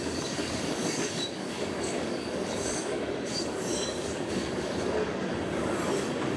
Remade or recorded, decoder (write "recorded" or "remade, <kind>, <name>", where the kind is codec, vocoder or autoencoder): remade, codec, DAC